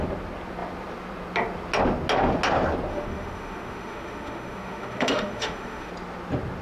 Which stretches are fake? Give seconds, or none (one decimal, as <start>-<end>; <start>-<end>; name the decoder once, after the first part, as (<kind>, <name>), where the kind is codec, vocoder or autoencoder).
2.9-5.9 (autoencoder, DAC-VAE)